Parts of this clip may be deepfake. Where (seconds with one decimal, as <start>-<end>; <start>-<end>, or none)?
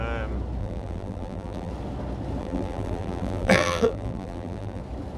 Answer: 0.6-1.7; 2.4-4.8